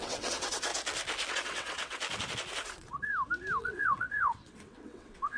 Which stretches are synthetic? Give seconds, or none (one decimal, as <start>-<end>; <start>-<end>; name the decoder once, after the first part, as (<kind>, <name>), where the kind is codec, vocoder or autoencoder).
0.0-0.7 (vocoder, WaveNeXt); 1.3-2.0; 2.6-3.1; 3.6-5.4